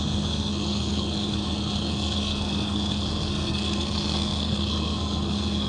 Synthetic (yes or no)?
yes